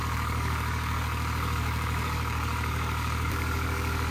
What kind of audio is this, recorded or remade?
remade